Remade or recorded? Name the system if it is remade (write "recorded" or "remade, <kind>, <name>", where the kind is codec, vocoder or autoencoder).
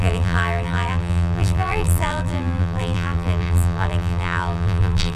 remade, vocoder, BigVGAN v2